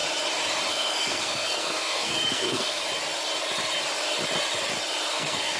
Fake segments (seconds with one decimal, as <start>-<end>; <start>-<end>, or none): 0.7-2.8; 5.1-5.6